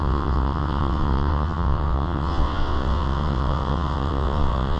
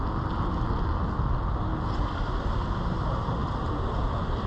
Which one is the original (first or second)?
second